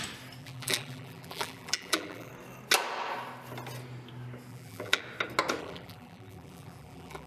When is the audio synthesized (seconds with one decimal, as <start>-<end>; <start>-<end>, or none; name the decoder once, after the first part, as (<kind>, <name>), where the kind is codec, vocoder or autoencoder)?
0.4-2.3 (vocoder, BigVGAN v2); 4.5-5.0; 5.6-7.3